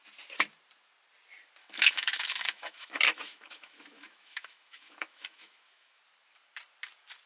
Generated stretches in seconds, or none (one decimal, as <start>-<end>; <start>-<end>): 1.6-6.0